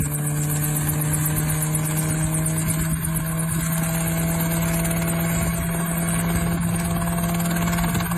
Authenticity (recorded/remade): recorded